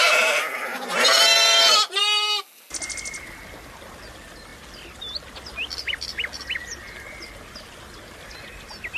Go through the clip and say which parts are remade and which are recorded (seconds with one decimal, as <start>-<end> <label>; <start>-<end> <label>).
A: 0.0-2.0 remade; 2.0-9.0 recorded